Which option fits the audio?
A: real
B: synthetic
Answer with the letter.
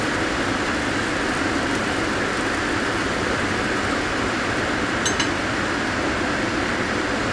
A